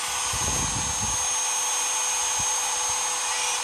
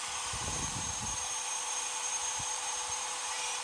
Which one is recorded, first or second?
first